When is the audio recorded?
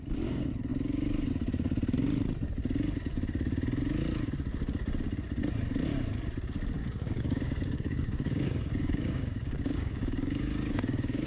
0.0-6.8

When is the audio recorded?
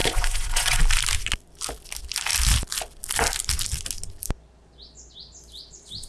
0.8-6.1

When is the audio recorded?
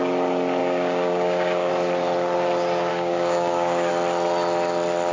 0.0-0.6; 1.7-2.9; 3.9-5.1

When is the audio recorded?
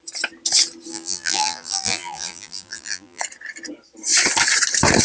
0.0-0.9; 3.2-5.0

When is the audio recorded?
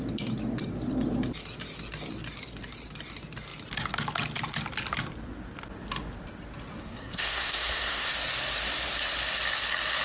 0.0-6.8; 8.1-10.0